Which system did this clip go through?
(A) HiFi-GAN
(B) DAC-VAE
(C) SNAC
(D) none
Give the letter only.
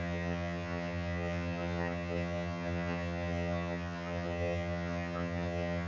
A